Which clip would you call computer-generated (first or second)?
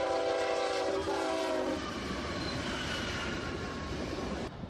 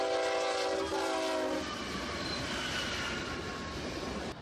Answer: first